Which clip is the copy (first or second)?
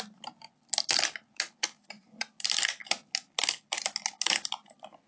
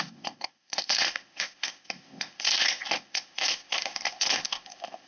second